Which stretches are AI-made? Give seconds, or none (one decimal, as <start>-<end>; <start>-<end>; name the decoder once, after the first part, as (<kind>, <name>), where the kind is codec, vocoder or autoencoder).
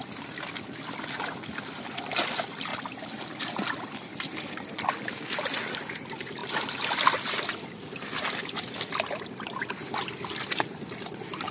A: none